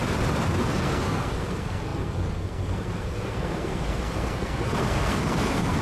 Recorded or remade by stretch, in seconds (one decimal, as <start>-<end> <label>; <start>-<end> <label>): 0.0-0.6 recorded; 0.6-5.8 remade